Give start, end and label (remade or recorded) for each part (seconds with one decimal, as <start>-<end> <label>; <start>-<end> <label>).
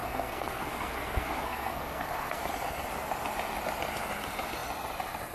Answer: 0.0-2.5 remade; 2.5-5.3 recorded